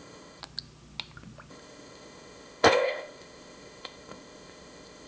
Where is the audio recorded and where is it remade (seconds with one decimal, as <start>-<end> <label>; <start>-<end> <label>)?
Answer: 0.0-0.4 remade; 0.4-1.5 recorded; 1.5-5.1 remade